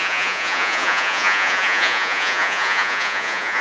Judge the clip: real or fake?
fake